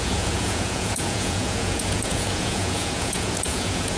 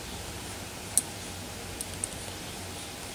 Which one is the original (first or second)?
second